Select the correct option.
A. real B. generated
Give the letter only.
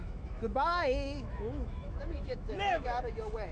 B